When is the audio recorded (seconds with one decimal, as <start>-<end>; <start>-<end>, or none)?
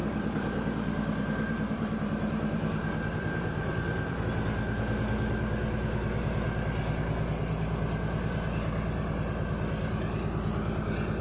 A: 4.2-11.2